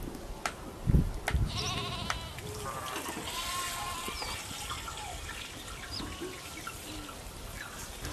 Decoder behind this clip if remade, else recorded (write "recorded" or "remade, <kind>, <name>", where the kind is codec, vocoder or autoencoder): recorded